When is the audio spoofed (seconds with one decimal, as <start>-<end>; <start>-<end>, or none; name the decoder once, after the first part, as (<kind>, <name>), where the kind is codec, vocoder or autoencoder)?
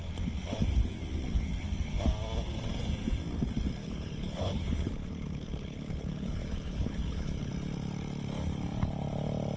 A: 3.8-7.5 (codec, HILCodec)